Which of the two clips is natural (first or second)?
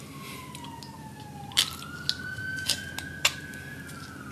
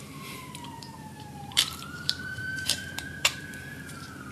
first